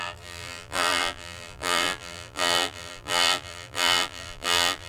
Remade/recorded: remade